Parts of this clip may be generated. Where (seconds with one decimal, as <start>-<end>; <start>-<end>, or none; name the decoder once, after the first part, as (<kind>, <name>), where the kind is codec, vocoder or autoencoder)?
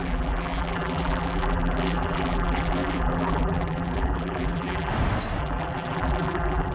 0.0-4.9 (vocoder, BigVGAN v2); 5.4-6.7